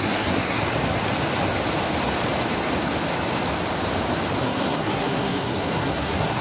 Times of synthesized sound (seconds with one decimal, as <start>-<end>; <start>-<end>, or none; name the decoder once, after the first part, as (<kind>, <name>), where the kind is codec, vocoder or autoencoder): 0.0-0.6 (codec, SNAC); 4.4-6.4